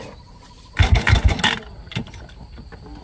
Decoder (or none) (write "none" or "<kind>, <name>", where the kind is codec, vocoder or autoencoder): none